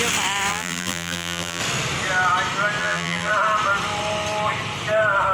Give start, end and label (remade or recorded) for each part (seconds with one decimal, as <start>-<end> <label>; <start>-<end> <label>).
0.0-0.5 recorded; 0.5-1.6 remade; 1.6-2.8 recorded; 2.8-3.3 remade; 3.3-5.3 recorded